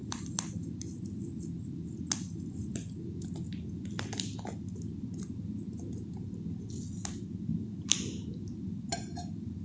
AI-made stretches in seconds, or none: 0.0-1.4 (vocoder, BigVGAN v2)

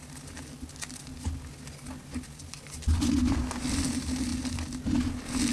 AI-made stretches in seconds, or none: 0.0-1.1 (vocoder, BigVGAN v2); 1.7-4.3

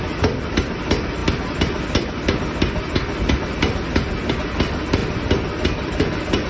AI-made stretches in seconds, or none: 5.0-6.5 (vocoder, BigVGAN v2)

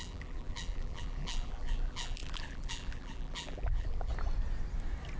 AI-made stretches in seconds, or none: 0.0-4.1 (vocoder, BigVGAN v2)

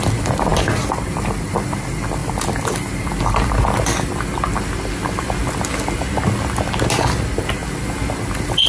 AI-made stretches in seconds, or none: 0.5-1.1 (vocoder, BigVGAN v2); 2.2-3.5

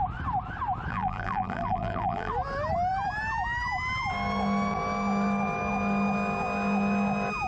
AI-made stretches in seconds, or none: 0.9-2.3 (vocoder, BigVGAN v2)

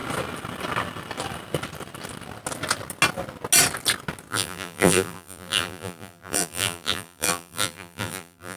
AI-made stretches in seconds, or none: 4.3-8.6 (vocoder, BigVGAN v2)